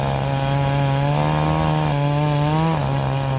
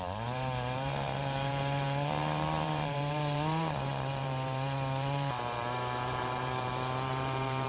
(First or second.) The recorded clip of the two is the first